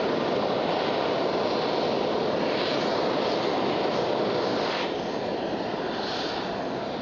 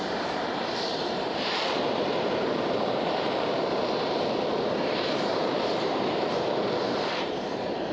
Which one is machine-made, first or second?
second